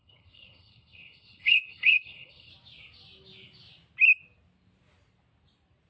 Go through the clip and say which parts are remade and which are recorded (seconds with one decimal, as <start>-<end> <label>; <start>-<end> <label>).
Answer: 0.0-2.5 remade; 2.5-5.9 recorded